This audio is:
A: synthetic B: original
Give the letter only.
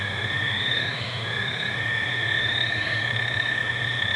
A